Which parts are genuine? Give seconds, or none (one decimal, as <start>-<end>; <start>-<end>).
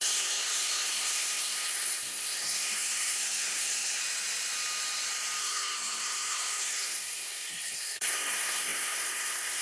4.0-5.4